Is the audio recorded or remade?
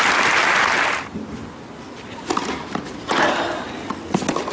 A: recorded